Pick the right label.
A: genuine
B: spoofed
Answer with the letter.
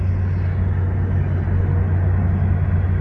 A